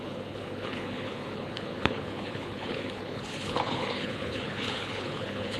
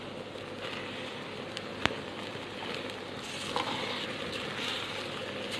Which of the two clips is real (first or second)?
second